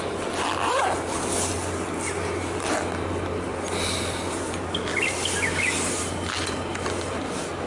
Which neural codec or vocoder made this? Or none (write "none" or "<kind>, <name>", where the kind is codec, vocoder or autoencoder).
none